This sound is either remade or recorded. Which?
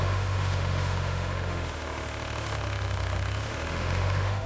remade